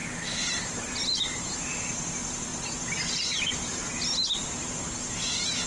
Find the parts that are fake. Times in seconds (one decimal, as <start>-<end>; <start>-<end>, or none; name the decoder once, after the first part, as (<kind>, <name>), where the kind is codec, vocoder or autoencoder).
none